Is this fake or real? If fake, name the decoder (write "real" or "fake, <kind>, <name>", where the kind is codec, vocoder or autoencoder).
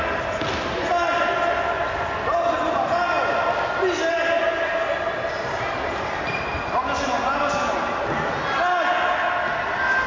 real